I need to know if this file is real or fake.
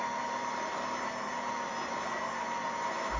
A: real